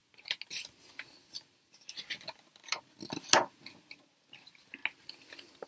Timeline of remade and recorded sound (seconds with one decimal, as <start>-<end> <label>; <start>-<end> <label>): 0.0-5.7 recorded